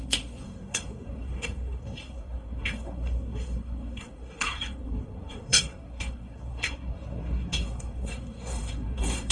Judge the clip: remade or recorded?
remade